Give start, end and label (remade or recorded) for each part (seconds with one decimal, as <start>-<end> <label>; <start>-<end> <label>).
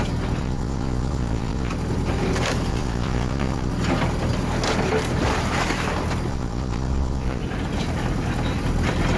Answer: 0.0-0.4 recorded; 0.4-1.7 remade; 1.7-2.7 recorded; 2.7-3.7 remade; 3.7-6.3 recorded; 6.3-7.4 remade; 7.4-9.2 recorded